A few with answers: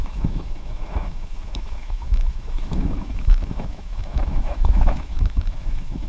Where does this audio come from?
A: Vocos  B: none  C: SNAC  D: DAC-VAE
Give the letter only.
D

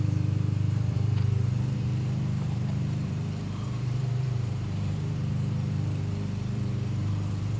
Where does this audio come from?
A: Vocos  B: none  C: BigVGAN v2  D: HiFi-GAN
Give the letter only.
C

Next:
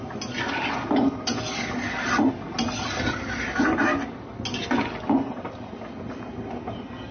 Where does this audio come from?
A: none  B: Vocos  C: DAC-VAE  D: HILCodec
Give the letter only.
A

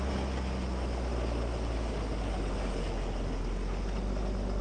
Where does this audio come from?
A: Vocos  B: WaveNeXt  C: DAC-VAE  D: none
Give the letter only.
D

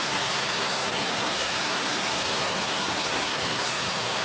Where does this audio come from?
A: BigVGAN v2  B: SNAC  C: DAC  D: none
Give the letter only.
B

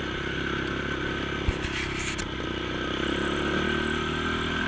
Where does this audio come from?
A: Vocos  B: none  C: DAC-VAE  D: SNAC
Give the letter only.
B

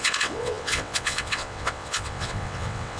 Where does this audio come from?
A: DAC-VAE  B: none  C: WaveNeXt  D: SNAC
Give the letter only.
C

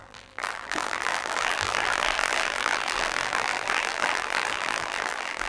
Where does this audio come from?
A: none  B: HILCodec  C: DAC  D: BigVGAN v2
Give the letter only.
D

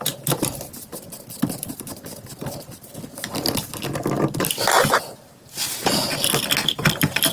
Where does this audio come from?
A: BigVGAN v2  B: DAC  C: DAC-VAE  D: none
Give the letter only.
D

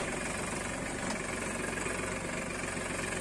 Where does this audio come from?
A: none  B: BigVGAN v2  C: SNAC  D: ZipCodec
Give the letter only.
A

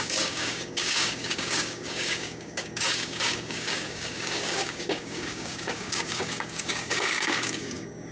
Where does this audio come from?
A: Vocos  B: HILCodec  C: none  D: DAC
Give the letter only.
D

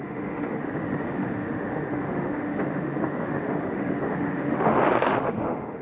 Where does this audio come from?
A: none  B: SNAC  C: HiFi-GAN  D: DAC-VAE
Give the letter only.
D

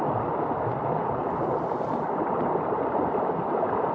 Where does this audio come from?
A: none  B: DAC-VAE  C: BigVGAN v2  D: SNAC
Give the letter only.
A